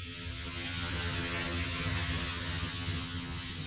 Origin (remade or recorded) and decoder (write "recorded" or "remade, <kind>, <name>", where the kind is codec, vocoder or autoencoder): remade, vocoder, HiFi-GAN